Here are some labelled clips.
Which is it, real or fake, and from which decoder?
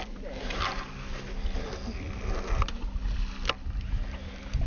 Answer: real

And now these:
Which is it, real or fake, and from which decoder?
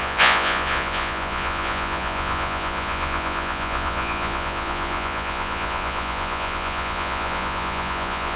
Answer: fake, vocoder, Vocos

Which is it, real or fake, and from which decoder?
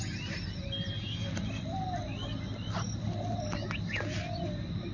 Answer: real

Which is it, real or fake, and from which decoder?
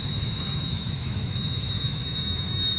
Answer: fake, autoencoder, DAC-VAE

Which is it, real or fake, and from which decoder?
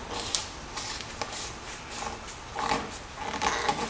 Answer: real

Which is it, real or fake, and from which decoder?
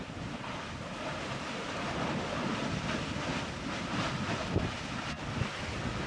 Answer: real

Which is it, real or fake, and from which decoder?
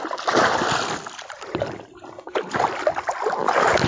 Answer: real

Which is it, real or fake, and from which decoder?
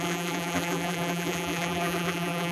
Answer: fake, vocoder, BigVGAN v2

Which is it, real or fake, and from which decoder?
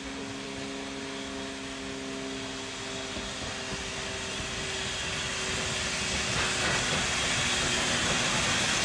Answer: real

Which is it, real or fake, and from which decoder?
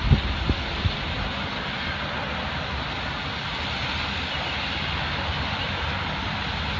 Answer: real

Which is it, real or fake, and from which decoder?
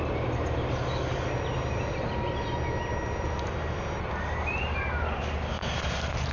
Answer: real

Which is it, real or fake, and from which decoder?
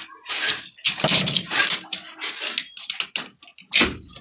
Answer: real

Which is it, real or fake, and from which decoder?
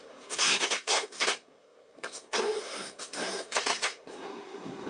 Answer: fake, codec, SNAC